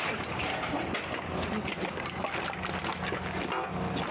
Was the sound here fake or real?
real